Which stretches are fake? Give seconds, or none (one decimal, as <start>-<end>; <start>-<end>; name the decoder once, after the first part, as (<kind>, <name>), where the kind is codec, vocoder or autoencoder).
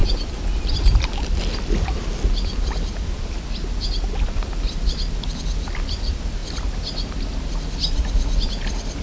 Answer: none